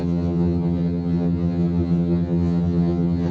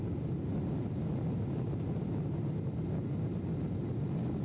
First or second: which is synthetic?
first